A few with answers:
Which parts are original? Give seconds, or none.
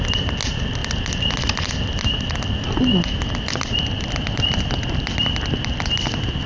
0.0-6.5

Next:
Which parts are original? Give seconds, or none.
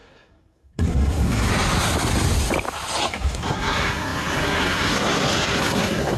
1.5-3.1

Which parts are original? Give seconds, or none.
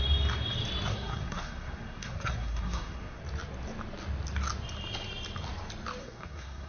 0.0-0.9; 3.2-6.0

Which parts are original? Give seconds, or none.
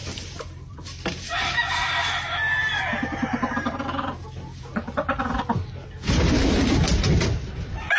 1.7-2.6; 3.7-4.7; 5.4-8.0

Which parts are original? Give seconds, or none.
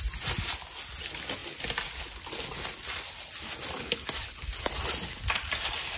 0.0-6.0